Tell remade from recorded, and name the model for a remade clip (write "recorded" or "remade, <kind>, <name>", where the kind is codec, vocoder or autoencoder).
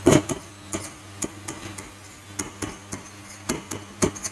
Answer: recorded